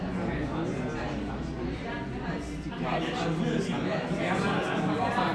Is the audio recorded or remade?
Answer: recorded